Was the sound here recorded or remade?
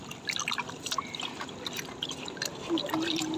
recorded